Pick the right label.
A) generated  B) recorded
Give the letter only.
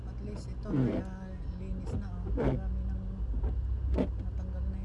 B